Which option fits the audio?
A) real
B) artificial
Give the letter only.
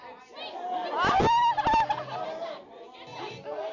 A